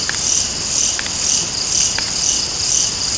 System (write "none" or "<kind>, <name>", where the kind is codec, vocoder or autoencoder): none